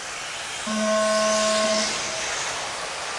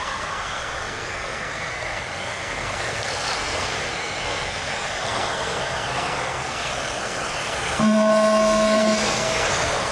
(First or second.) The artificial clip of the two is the second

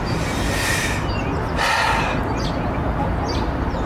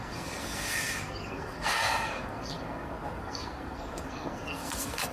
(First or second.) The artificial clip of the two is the second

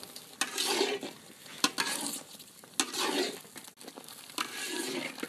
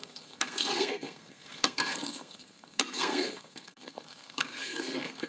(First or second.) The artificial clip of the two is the second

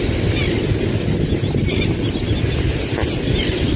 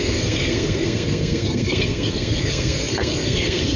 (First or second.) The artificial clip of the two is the second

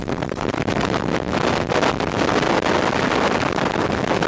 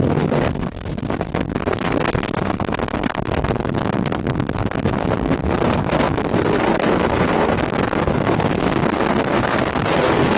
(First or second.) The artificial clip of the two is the second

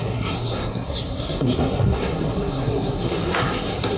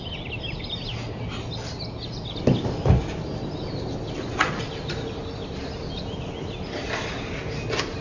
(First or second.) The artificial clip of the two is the first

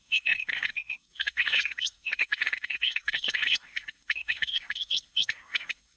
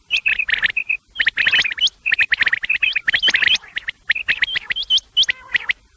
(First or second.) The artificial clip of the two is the first